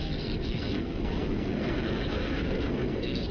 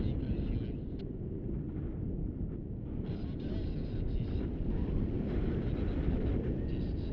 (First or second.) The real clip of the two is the second